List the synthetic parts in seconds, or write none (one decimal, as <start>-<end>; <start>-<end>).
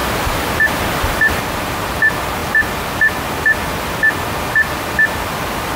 1.3-2.4